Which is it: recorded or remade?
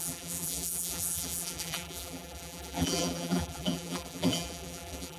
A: remade